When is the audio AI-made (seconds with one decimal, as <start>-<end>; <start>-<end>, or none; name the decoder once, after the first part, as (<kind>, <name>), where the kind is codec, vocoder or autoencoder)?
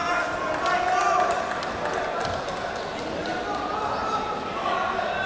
4.0-4.7 (vocoder, BigVGAN v2)